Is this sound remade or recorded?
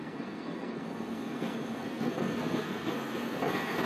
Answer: remade